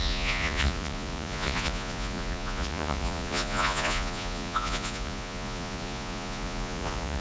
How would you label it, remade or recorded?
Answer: remade